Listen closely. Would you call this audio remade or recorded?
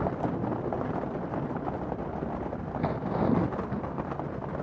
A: recorded